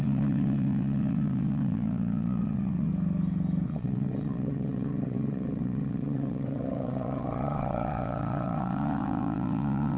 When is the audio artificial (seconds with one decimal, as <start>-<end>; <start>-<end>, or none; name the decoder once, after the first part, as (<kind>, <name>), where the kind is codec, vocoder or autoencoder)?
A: 0.0-2.9 (vocoder, WaveNeXt); 3.7-10.0